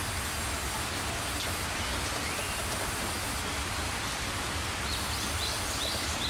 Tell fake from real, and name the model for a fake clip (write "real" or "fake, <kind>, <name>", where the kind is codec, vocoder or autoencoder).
real